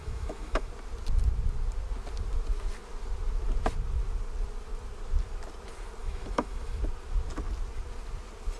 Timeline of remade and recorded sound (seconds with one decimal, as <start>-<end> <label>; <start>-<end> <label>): 0.0-0.7 remade; 0.7-6.0 recorded; 6.0-6.8 remade; 6.8-8.6 recorded